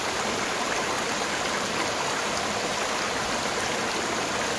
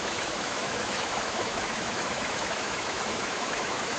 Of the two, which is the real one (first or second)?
first